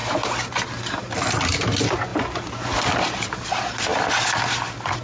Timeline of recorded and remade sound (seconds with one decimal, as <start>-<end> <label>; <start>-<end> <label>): 0.0-5.0 recorded